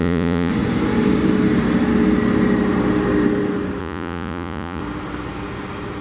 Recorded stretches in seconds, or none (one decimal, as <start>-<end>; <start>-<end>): 0.5-3.8; 4.8-6.0